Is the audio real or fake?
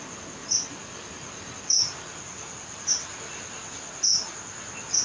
real